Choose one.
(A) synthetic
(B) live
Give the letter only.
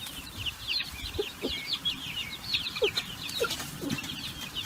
A